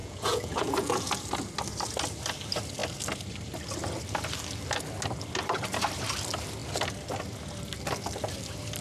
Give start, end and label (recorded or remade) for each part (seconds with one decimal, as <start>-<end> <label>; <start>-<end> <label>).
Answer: 0.0-1.1 remade; 1.1-8.8 recorded